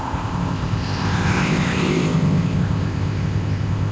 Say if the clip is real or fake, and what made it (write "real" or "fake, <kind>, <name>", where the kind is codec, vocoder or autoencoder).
fake, codec, ZipCodec